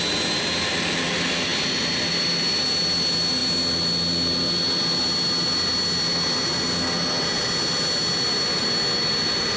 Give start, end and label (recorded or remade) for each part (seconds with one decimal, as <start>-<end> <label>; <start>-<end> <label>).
0.0-9.6 recorded